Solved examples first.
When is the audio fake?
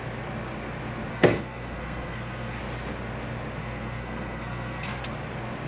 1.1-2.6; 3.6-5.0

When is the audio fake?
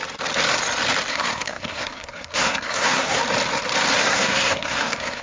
1.1-3.2; 4.0-5.2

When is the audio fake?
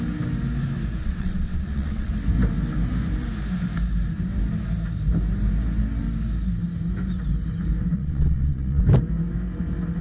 1.0-2.1; 7.9-8.8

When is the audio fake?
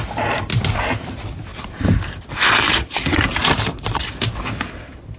1.5-2.2; 3.4-5.2